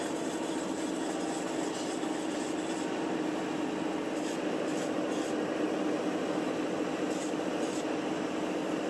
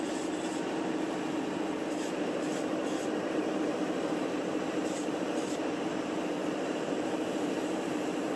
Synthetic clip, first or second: second